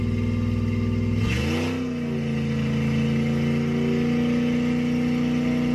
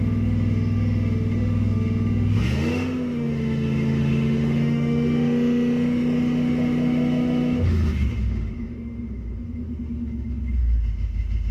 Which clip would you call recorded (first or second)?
first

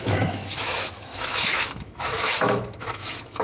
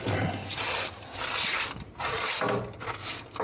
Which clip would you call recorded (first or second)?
second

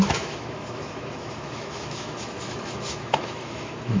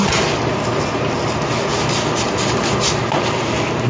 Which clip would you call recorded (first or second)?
second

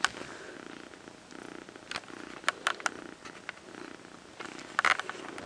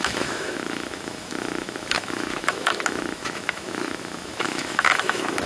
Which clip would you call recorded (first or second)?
first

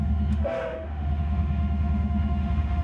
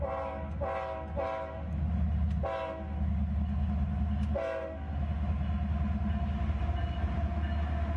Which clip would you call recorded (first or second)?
second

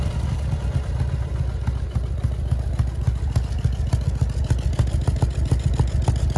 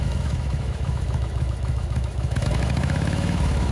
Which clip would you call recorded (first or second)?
first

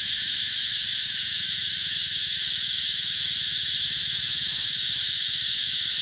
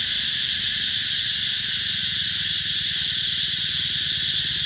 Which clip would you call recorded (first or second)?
second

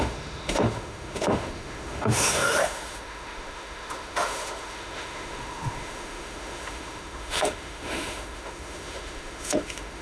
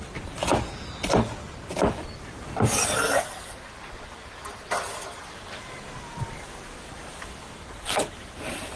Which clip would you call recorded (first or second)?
second